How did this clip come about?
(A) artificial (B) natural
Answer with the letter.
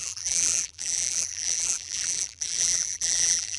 A